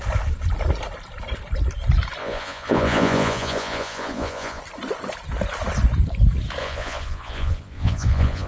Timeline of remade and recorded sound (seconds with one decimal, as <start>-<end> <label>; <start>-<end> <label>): 0.0-2.2 recorded; 2.2-4.6 remade; 4.6-6.6 recorded; 6.6-8.5 remade